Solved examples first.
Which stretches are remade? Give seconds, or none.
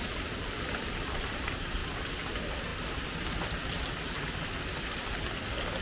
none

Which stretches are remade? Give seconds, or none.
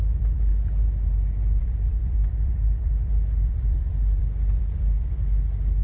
0.0-0.5; 1.6-5.8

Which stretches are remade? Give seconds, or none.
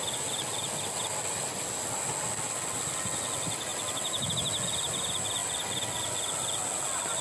none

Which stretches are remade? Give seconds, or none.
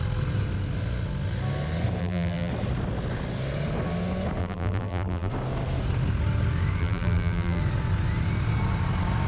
2.0-2.5; 4.4-5.3; 6.8-7.6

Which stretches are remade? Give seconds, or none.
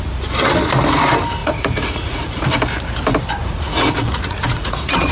1.4-2.4; 3.4-5.1